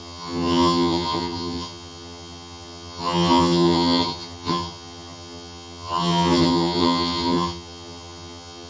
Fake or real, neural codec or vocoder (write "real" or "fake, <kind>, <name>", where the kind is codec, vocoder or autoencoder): fake, vocoder, HiFi-GAN